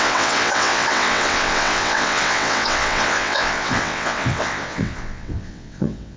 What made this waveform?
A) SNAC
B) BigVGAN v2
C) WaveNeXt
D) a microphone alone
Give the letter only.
C